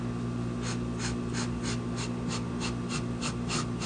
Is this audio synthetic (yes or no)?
no